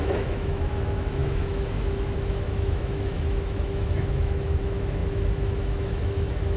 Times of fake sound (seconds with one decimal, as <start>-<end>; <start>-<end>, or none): 0.0-6.6

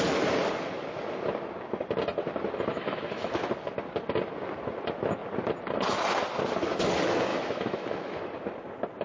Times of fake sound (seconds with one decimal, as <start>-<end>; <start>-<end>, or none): 2.7-3.3; 7.3-8.2

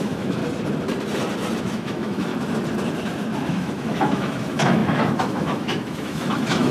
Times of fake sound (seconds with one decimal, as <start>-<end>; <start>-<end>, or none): 0.0-0.4; 1.6-2.3; 3.4-6.7

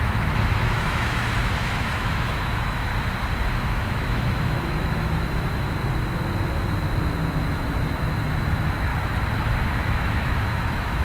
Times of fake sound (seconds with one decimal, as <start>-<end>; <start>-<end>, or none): 0.0-2.9; 3.5-5.8; 7.4-8.9; 9.6-11.0